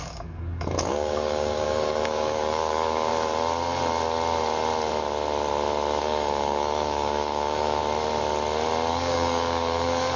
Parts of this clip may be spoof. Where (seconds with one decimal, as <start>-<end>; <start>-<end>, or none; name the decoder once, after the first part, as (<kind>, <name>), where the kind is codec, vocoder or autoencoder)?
0.0-3.1 (codec, DAC); 6.0-7.8; 8.9-10.2